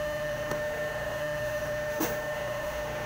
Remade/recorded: remade